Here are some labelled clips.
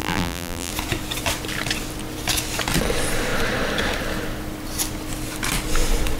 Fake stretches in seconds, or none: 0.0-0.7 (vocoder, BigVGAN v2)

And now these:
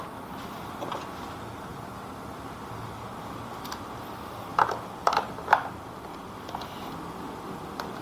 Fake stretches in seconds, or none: 1.7-2.5 (vocoder, BigVGAN v2)

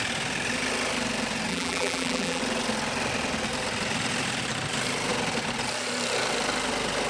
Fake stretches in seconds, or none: 1.5-2.4 (vocoder, BigVGAN v2)

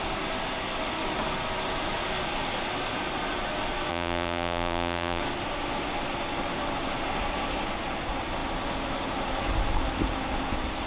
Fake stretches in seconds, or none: 3.9-5.2 (vocoder, BigVGAN v2)